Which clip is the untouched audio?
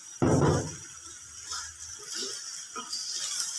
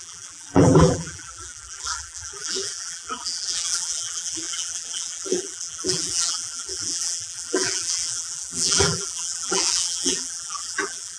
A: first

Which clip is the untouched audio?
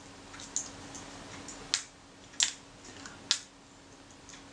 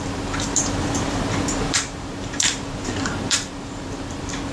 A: first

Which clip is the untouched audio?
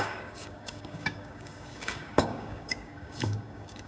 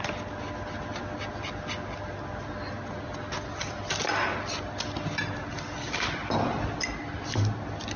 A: second